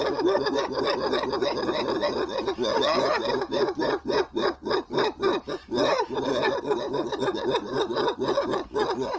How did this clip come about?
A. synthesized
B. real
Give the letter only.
B